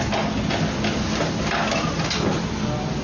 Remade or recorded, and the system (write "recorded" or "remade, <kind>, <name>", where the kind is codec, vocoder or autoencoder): recorded